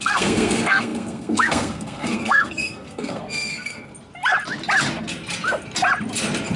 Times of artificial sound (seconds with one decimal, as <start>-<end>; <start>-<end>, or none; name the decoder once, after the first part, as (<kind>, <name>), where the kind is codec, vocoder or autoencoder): 0.0-3.9 (codec, SNAC)